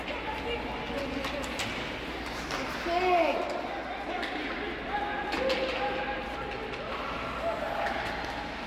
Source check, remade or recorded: recorded